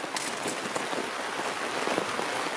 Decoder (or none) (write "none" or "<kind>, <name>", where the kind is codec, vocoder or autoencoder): none